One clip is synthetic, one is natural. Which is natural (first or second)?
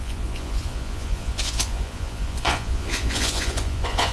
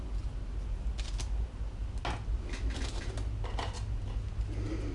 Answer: second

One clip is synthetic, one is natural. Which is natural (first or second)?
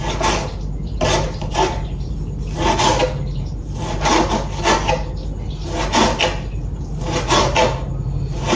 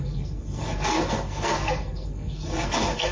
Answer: first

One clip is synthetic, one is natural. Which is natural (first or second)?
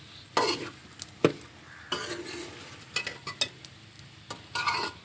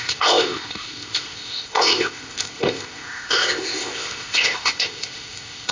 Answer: first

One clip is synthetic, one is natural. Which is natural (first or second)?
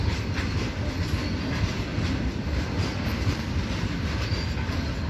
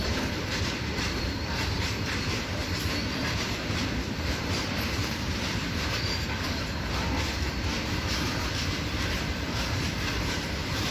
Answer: first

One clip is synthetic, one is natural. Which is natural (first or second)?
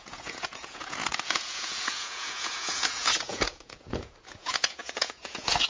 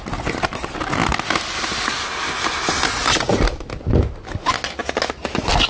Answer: second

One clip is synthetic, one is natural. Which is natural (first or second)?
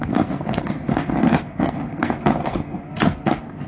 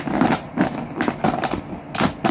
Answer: second